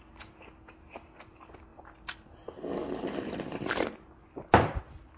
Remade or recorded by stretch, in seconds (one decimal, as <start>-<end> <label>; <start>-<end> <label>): 0.0-5.2 recorded

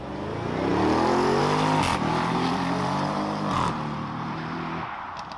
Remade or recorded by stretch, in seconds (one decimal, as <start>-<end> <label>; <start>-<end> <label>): 0.0-1.9 recorded; 1.9-4.6 remade; 4.6-5.4 recorded